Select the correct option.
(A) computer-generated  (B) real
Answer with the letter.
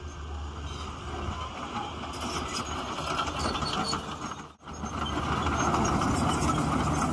B